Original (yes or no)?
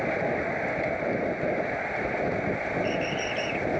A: yes